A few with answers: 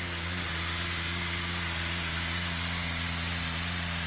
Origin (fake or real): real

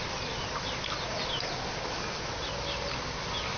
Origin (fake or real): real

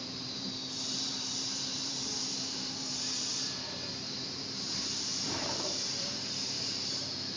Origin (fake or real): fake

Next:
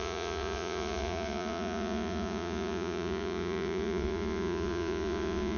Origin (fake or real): fake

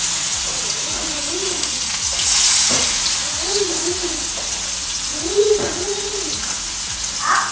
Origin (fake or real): fake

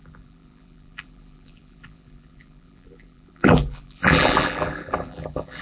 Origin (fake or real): fake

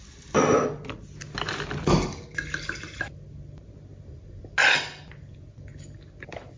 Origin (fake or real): real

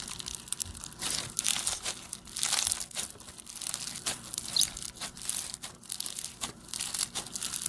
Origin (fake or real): real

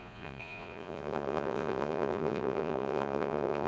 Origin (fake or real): fake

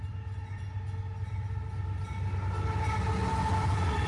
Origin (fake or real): real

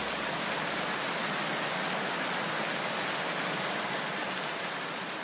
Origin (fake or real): real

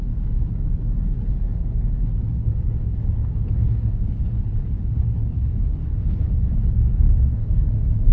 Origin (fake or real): fake